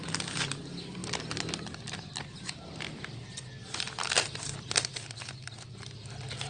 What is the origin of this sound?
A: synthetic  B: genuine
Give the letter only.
B